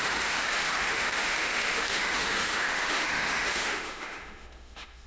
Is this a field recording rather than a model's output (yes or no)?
no